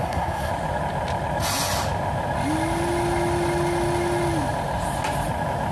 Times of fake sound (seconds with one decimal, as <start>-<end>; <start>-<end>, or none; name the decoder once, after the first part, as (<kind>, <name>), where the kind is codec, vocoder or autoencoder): 0.0-0.5 (codec, SNAC)

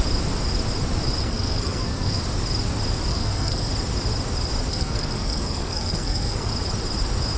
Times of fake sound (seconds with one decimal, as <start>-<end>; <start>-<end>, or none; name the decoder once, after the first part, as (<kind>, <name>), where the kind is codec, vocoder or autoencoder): 1.2-2.2 (codec, SNAC); 3.1-3.7; 4.7-6.5